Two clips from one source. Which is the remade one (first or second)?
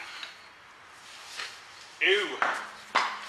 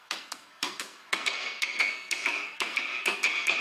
second